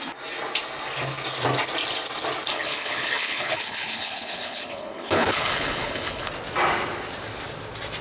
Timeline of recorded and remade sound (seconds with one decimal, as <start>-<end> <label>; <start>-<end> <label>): 0.0-2.5 recorded; 2.5-6.3 remade; 6.3-8.0 recorded